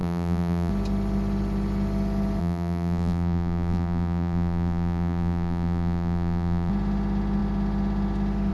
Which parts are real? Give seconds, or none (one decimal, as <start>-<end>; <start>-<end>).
0.7-2.4; 6.7-8.5